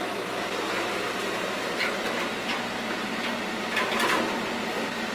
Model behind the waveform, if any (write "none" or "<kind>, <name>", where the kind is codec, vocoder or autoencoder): none